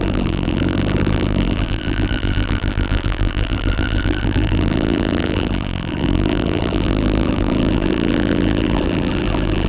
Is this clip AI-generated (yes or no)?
yes